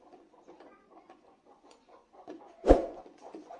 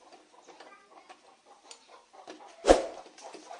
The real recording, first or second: second